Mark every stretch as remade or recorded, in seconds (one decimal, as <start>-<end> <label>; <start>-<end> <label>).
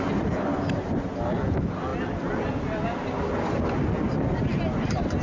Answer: 0.0-5.2 recorded